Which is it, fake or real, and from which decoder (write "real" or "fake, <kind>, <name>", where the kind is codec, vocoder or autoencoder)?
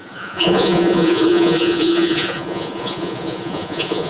fake, vocoder, Vocos